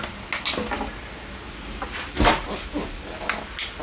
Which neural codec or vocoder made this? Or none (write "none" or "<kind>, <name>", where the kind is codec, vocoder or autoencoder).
none